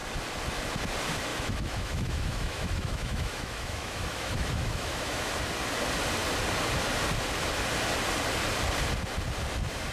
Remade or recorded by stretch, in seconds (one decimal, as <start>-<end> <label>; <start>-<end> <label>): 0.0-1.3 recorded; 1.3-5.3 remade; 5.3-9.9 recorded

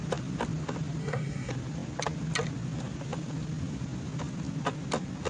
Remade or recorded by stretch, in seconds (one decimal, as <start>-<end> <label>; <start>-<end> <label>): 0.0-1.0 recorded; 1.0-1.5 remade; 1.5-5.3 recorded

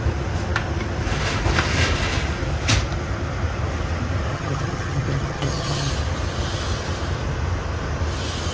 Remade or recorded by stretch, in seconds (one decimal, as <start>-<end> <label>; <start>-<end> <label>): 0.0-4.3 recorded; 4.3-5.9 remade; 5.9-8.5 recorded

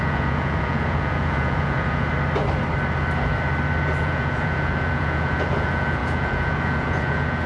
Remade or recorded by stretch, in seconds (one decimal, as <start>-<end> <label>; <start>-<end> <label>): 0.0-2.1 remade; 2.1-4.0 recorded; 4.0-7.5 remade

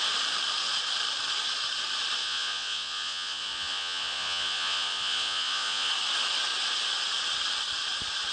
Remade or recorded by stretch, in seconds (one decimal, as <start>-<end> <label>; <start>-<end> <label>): 0.0-2.2 recorded; 2.2-5.9 remade; 5.9-8.3 recorded

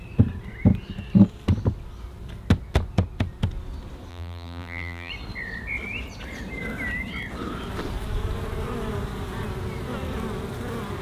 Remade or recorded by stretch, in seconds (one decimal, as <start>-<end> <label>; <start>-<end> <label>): 0.0-4.1 recorded; 4.1-5.1 remade; 5.1-11.0 recorded